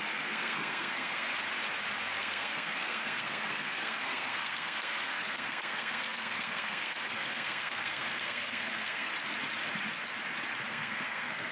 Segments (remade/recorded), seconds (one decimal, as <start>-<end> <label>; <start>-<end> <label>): 0.0-1.3 remade; 1.3-2.2 recorded; 2.2-9.1 remade; 9.1-10.7 recorded; 10.7-11.5 remade